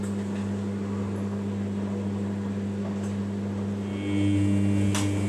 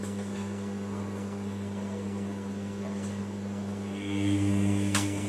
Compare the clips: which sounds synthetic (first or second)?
second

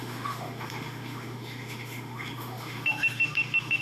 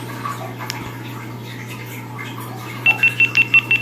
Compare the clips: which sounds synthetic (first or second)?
first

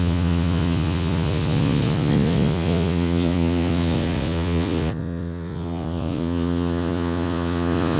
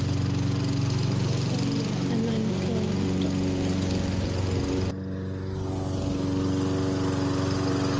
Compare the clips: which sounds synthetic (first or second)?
first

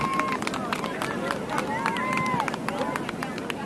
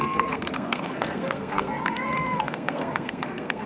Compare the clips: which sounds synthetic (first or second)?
second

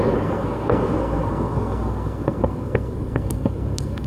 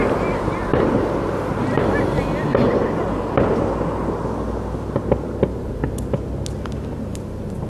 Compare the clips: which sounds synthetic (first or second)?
first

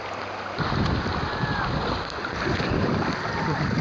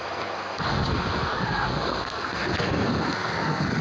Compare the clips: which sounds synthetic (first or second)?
second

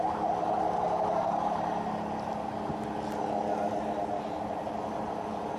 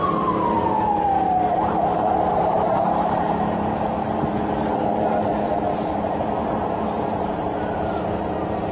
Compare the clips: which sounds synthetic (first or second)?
second